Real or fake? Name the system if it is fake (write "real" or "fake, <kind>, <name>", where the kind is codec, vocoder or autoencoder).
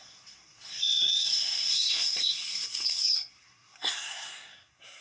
fake, codec, SNAC